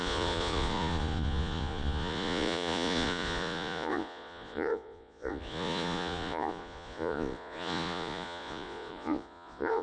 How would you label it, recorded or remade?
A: remade